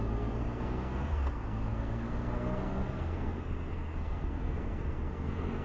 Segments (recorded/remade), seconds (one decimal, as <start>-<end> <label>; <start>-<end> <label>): 0.0-5.6 remade